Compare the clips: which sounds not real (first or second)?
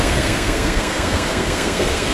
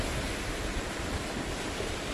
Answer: first